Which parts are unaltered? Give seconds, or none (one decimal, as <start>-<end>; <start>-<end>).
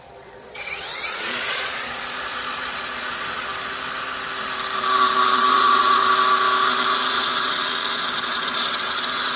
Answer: 3.5-5.5; 6.0-7.1